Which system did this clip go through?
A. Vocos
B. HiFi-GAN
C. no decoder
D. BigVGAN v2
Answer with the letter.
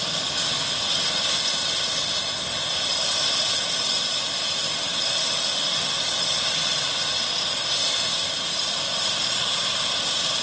C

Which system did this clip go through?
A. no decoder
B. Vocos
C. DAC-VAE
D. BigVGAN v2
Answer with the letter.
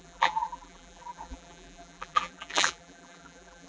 D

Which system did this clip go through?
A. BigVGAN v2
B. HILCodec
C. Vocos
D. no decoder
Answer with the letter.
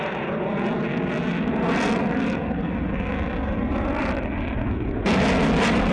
D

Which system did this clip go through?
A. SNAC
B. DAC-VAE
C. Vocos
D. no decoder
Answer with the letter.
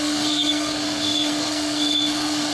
A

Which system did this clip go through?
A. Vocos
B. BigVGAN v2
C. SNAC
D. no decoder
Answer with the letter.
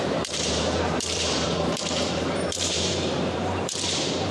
B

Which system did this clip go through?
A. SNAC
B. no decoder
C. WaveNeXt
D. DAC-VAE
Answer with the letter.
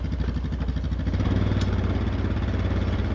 B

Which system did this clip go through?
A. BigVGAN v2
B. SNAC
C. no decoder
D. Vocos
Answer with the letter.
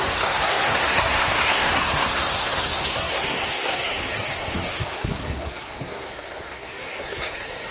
B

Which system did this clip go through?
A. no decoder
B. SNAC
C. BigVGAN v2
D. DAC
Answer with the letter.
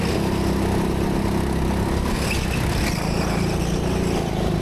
A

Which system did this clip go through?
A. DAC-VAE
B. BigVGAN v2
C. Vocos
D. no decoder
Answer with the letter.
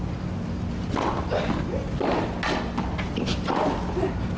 D